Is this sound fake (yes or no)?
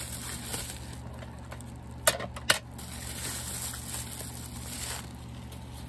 no